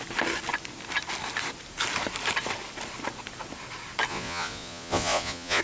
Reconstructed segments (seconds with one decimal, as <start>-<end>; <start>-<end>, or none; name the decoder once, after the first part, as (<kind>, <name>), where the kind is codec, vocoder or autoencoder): 4.1-5.6 (vocoder, Vocos)